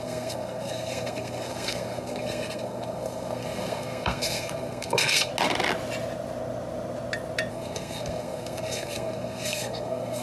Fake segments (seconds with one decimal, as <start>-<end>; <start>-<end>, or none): 0.0-5.3; 7.5-10.2